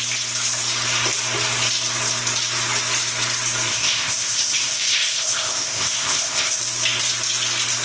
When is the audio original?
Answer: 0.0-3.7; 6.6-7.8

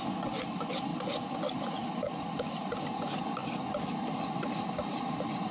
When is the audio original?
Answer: 0.0-5.5